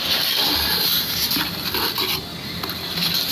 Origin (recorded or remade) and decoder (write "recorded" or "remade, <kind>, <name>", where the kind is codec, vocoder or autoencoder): recorded